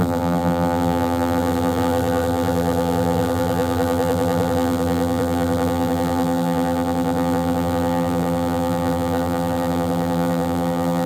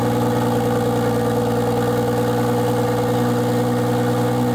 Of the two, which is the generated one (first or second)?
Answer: first